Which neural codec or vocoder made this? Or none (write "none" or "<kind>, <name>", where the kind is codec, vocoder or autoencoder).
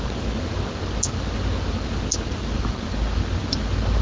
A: none